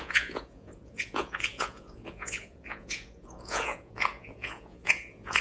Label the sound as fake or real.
fake